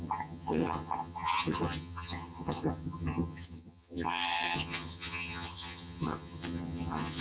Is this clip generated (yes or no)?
yes